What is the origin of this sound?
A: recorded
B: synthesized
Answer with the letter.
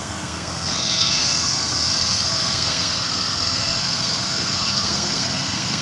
B